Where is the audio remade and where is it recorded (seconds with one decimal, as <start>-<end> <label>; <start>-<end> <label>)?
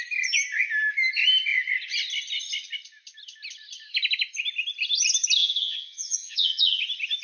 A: 0.0-5.4 recorded; 5.4-6.8 remade; 6.8-7.2 recorded